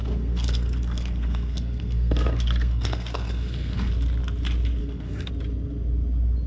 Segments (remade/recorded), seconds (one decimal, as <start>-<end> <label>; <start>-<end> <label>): 0.0-3.9 remade; 3.9-4.8 recorded; 4.8-5.3 remade; 5.3-6.5 recorded